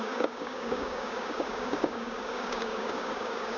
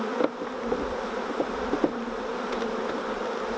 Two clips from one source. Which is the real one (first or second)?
second